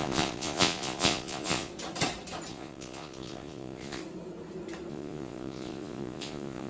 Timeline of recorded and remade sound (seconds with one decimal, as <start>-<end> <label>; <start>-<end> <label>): 0.0-1.7 remade; 1.7-2.5 recorded; 2.5-4.0 remade; 4.0-4.9 recorded; 4.9-6.7 remade